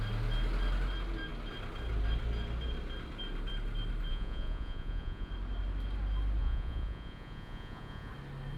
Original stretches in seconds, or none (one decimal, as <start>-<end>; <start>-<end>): 0.0-4.1; 5.3-6.4; 8.1-8.6